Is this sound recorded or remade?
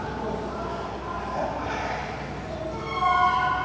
recorded